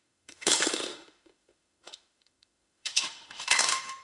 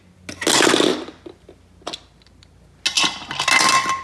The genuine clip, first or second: second